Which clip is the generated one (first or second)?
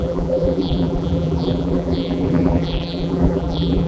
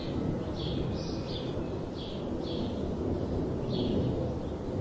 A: first